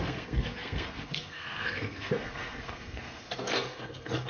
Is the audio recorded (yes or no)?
no